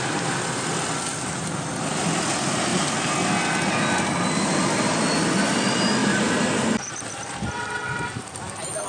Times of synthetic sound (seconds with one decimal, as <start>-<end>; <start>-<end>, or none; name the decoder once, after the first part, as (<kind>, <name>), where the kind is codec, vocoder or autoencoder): none